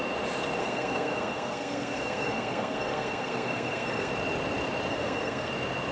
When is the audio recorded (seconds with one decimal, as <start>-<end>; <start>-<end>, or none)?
0.0-0.6; 4.1-4.9; 5.5-5.9